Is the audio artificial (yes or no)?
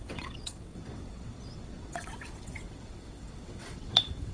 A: yes